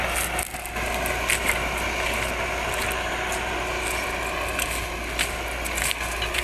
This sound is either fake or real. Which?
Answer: real